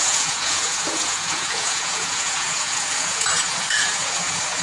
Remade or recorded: remade